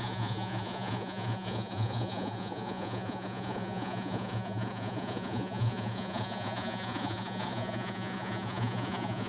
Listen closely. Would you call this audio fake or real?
fake